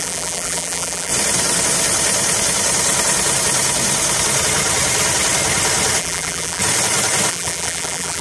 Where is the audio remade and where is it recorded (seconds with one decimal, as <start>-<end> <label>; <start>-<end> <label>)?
0.0-1.1 remade; 1.1-6.0 recorded; 6.0-6.6 remade; 6.6-7.3 recorded; 7.3-8.2 remade